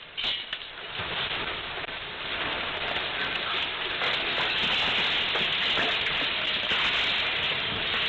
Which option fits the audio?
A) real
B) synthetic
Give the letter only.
A